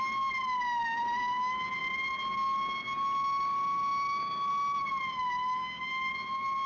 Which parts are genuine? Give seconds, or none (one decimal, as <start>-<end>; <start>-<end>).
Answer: 0.0-5.6; 6.1-6.7